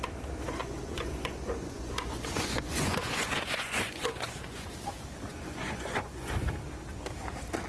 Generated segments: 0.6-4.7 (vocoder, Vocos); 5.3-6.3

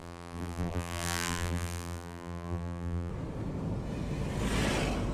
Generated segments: 0.0-3.1 (vocoder, BigVGAN v2)

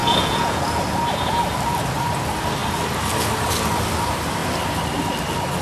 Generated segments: 0.0-0.8 (vocoder, Vocos)